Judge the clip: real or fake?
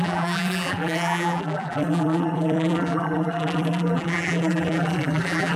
fake